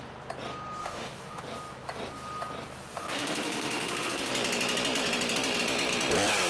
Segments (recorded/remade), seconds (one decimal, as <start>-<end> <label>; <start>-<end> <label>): 0.0-0.8 recorded; 0.8-1.4 remade; 1.4-2.9 recorded; 2.9-4.3 remade; 4.3-6.5 recorded